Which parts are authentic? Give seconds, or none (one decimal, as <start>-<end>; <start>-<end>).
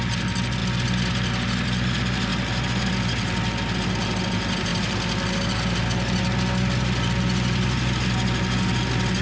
0.0-9.2